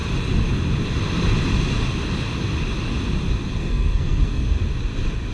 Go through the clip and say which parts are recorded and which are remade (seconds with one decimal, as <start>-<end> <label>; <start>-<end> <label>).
0.0-3.6 recorded; 3.6-4.6 remade; 4.6-5.3 recorded